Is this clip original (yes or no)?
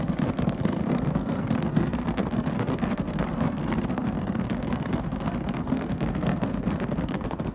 no